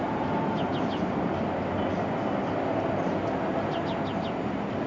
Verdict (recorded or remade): recorded